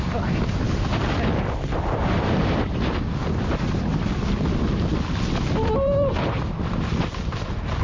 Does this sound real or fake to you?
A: real